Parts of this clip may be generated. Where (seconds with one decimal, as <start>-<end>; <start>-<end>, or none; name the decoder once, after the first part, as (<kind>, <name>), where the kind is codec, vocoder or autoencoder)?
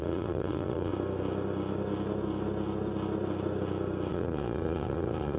0.0-0.9 (vocoder, Vocos); 4.1-5.4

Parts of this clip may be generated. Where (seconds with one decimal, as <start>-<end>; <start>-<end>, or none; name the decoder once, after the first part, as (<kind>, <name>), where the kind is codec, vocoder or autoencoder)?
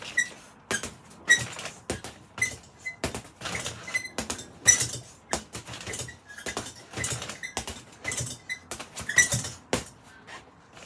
none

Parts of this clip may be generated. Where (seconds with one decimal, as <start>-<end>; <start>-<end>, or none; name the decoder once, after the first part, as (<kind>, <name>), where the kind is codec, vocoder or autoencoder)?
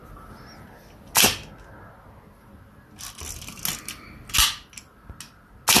none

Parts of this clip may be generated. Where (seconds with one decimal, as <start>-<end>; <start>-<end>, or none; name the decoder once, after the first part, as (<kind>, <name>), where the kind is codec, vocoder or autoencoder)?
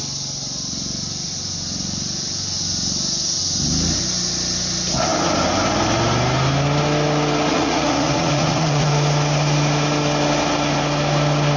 7.5-8.9 (vocoder, Vocos)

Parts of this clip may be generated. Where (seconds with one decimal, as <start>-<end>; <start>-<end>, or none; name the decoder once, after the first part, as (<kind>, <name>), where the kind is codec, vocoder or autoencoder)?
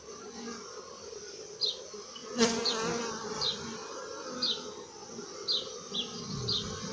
2.2-2.7 (vocoder, Vocos)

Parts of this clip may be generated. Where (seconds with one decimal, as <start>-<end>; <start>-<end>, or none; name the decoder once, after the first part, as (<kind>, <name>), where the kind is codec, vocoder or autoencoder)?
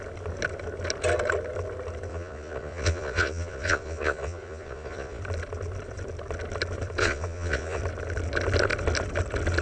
2.1-5.2 (vocoder, Vocos); 7.0-7.8